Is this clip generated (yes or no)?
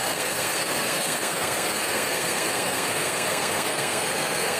yes